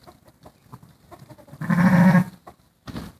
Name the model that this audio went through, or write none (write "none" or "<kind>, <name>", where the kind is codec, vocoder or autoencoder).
none